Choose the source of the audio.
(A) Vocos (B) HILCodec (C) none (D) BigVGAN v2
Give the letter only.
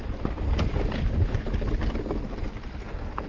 C